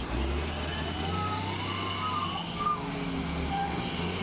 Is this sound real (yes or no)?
yes